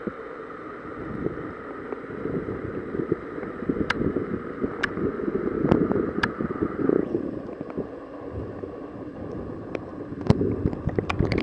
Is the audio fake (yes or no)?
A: yes